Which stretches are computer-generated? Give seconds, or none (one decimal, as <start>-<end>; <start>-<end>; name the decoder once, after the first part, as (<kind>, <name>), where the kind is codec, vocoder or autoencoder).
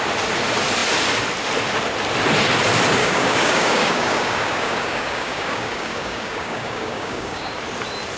3.0-7.5 (codec, DAC)